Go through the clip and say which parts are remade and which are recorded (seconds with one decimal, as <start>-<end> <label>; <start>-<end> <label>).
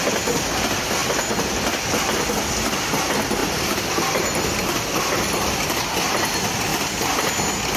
0.0-3.4 recorded; 3.4-4.5 remade; 4.5-7.8 recorded